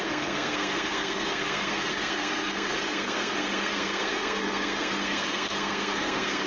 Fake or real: fake